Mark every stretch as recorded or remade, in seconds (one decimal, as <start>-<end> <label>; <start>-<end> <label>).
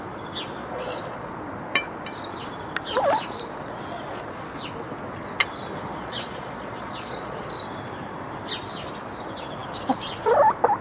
0.0-0.6 recorded; 0.6-1.3 remade; 1.3-6.0 recorded; 6.0-7.5 remade; 7.5-10.8 recorded